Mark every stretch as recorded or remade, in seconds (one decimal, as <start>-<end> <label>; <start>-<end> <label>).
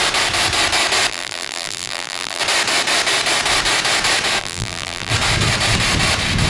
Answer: 0.0-1.1 recorded; 1.1-2.4 remade; 2.4-4.4 recorded; 4.4-5.1 remade; 5.1-6.5 recorded